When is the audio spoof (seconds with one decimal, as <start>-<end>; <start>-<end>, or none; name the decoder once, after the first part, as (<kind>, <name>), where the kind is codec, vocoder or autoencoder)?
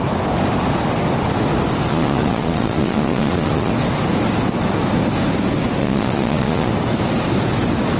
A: 1.9-3.7 (vocoder, Vocos); 5.8-6.7